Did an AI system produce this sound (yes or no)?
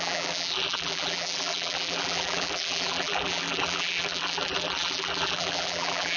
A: yes